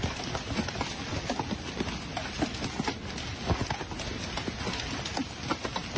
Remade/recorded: recorded